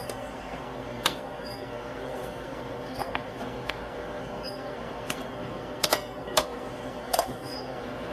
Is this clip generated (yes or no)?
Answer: yes